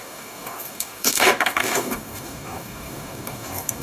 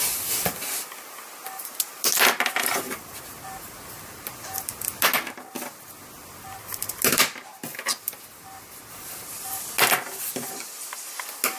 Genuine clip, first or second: second